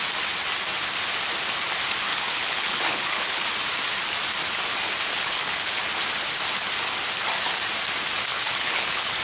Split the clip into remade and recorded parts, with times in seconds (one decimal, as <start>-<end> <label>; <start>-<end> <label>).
0.0-2.1 recorded; 2.1-3.4 remade; 3.4-5.1 recorded; 5.1-5.7 remade; 5.7-8.3 recorded; 8.3-9.2 remade